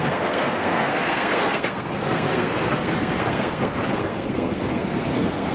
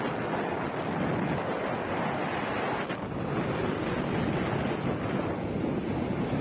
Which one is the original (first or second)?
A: second